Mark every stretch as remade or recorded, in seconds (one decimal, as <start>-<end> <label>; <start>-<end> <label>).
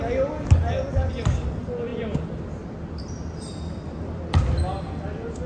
0.0-5.5 recorded